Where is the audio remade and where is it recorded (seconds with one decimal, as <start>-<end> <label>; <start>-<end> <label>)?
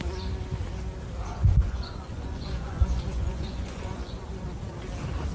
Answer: 0.0-1.3 recorded; 1.3-4.2 remade; 4.2-5.3 recorded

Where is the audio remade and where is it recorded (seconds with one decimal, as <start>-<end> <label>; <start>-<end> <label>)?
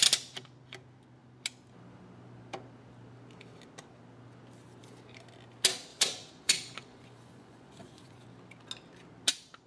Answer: 0.0-5.9 recorded; 5.9-8.3 remade; 8.3-9.7 recorded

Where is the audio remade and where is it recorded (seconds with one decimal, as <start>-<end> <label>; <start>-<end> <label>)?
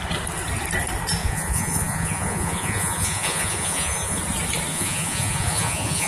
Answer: 0.0-1.2 recorded; 1.2-4.2 remade; 4.2-4.7 recorded; 4.7-6.1 remade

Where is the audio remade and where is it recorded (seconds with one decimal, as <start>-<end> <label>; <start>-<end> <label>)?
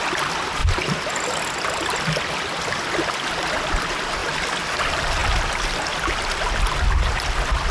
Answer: 0.0-7.7 recorded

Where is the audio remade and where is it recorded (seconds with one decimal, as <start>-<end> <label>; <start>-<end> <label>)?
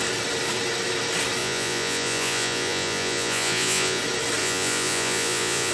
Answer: 0.0-1.4 recorded; 1.4-4.0 remade; 4.0-4.4 recorded; 4.4-5.7 remade